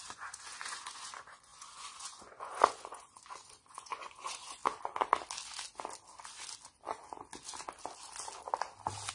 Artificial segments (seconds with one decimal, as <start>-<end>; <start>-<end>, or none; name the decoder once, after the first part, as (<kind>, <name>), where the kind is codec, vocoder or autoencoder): 0.0-4.6 (vocoder, Vocos)